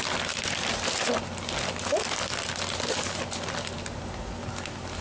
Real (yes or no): yes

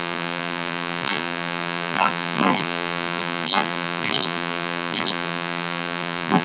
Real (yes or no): no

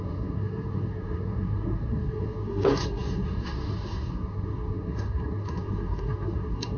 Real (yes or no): no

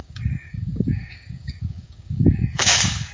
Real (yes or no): no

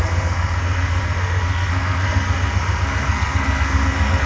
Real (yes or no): no